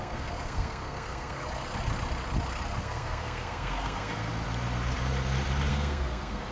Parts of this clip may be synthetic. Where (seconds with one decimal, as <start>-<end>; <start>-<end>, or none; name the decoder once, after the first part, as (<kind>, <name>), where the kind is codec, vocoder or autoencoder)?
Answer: 0.0-1.4 (codec, SNAC); 2.8-4.3; 5.7-6.5